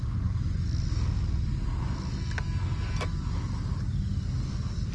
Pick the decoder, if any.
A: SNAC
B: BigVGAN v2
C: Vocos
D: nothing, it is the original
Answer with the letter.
D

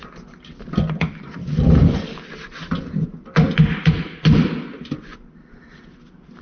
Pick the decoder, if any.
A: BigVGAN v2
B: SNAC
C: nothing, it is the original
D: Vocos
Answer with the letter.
C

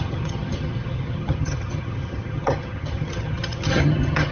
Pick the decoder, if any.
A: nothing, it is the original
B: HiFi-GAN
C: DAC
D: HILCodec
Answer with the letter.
B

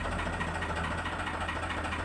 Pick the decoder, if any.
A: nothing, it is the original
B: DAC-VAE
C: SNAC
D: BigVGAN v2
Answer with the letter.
A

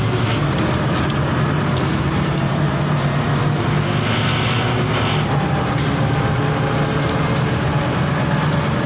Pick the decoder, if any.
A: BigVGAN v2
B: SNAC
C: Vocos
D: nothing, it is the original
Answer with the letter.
D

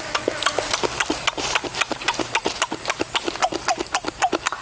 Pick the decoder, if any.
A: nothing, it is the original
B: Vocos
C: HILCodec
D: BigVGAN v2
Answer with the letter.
A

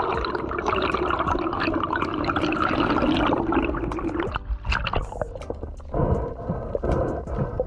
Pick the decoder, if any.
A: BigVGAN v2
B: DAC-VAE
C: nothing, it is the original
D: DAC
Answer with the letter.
C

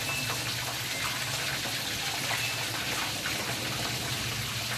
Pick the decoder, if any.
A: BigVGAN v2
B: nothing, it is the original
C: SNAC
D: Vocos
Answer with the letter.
B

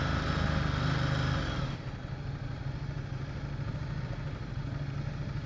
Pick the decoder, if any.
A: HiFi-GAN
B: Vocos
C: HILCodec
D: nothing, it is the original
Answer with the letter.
D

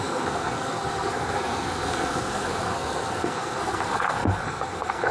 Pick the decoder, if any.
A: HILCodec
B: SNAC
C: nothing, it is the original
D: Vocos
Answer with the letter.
B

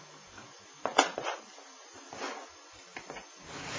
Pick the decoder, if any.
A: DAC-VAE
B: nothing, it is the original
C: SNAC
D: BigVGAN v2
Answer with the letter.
B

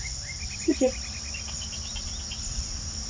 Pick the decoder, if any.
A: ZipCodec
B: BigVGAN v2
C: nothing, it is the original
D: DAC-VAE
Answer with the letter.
C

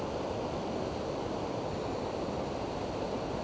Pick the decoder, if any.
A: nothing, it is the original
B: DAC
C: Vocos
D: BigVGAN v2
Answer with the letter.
A